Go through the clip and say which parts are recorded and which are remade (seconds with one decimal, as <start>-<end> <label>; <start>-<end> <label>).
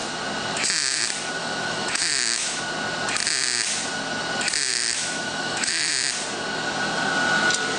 0.0-1.4 recorded; 1.4-2.6 remade; 2.6-4.7 recorded; 4.7-5.9 remade; 5.9-7.8 recorded